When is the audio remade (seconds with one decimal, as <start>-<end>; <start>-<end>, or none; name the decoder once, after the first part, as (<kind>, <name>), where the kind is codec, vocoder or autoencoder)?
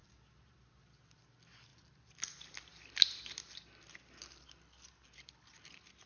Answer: none